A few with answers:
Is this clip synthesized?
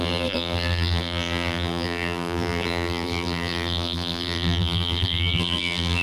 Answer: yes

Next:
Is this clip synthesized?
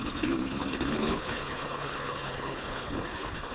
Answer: yes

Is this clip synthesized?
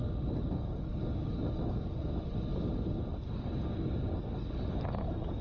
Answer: no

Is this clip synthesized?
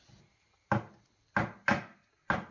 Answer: no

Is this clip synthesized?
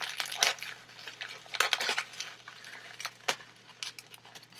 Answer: no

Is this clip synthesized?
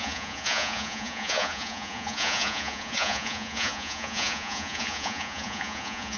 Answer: yes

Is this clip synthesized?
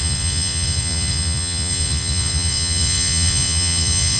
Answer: yes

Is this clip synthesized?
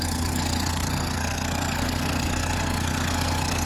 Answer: yes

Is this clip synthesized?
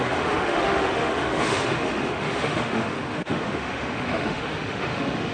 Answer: yes